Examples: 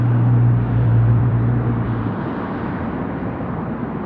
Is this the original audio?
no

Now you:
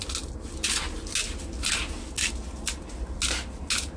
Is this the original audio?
yes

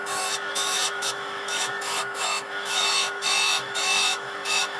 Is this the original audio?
no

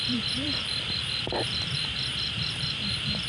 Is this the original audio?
no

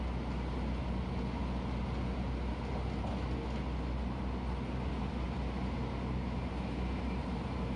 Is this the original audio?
yes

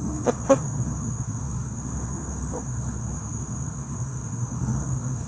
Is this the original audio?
no